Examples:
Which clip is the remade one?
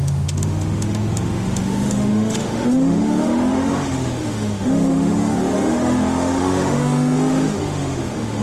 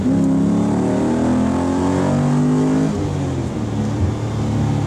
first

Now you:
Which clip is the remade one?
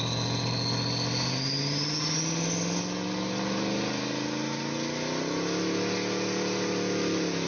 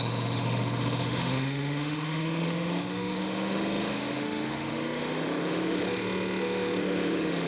second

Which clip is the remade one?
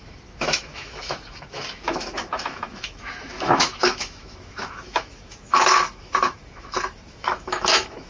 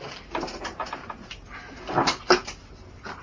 first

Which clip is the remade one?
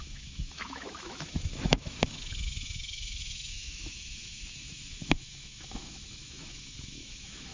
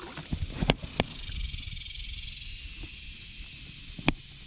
first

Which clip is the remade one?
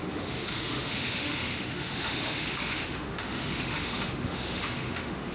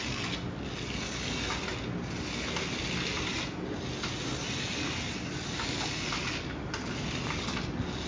first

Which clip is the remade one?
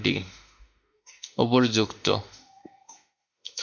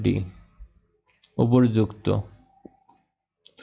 first